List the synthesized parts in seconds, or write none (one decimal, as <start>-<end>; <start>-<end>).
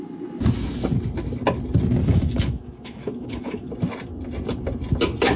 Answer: 2.0-3.7